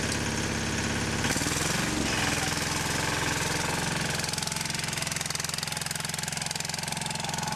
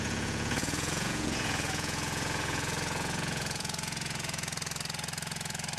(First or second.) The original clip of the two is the first